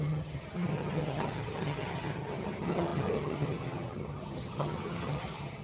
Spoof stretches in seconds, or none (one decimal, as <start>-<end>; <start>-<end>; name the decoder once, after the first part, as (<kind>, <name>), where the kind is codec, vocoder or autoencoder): 0.0-5.6 (vocoder, HiFi-GAN)